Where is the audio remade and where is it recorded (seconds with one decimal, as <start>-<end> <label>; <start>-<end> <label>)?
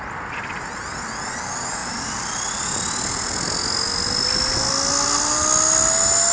0.0-6.3 recorded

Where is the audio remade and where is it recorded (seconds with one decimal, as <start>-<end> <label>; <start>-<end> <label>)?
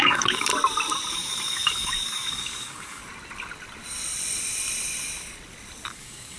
0.0-0.5 remade; 0.5-1.1 recorded; 1.1-3.0 remade; 3.0-5.9 recorded; 5.9-6.4 remade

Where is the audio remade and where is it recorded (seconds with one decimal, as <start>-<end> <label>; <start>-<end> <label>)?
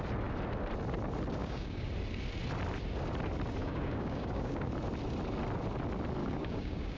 0.0-1.4 recorded; 1.4-1.9 remade; 1.9-3.6 recorded; 3.6-4.7 remade; 4.7-6.2 recorded; 6.2-7.0 remade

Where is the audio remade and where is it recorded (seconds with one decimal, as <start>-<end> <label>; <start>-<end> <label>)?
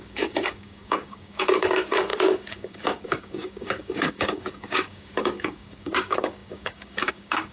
0.0-7.5 remade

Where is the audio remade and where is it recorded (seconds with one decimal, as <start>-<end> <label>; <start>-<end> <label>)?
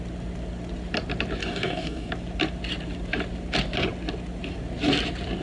0.0-1.4 recorded; 1.4-2.1 remade; 2.1-5.4 recorded